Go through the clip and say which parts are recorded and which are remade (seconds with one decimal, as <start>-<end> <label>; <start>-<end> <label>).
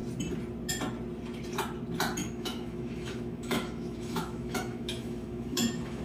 0.0-2.2 recorded; 2.2-6.0 remade